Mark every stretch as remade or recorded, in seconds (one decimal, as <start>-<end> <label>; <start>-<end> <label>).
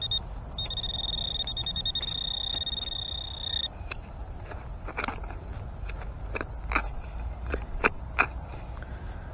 0.0-6.8 recorded; 6.8-8.0 remade; 8.0-9.3 recorded